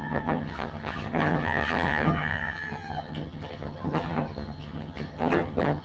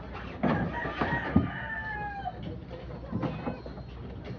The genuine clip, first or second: second